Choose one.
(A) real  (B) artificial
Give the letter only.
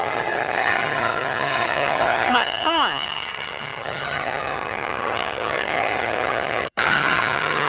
B